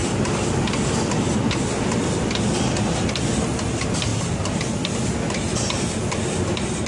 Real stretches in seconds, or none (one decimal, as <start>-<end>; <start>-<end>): 0.0-6.9